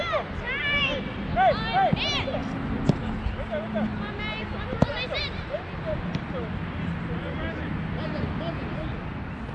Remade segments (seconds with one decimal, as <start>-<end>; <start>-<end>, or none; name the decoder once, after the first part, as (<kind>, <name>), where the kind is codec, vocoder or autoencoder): none